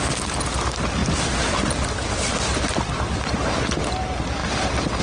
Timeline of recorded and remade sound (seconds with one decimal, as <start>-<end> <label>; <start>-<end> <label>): 0.0-1.0 recorded; 1.0-4.0 remade; 4.0-4.4 recorded; 4.4-5.0 remade